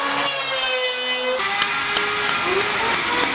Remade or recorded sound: recorded